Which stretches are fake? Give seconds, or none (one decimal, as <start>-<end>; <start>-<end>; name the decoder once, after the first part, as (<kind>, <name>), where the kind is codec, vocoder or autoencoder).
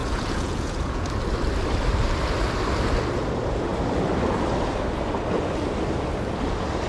0.0-1.1 (vocoder, Vocos)